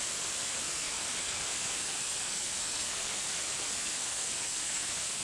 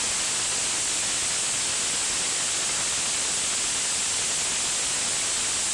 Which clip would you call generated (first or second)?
first